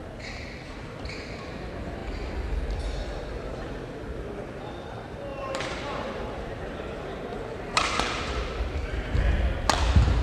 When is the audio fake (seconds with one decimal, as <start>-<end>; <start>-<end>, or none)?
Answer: 5.3-9.2